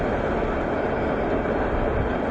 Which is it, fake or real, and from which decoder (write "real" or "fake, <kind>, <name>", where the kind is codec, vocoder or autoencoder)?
real